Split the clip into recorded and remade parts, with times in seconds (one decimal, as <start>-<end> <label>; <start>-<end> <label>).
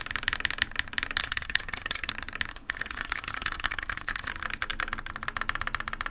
0.0-1.2 recorded; 1.2-2.1 remade; 2.1-2.5 recorded; 2.5-4.3 remade; 4.3-6.1 recorded